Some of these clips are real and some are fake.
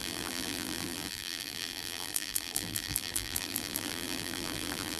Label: fake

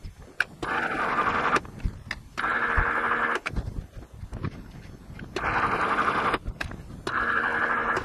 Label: real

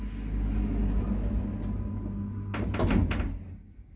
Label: real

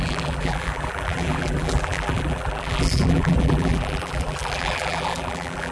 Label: fake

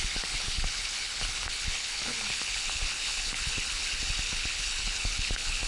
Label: fake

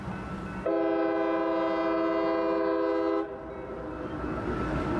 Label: real